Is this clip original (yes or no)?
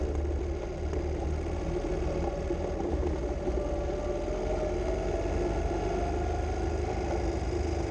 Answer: yes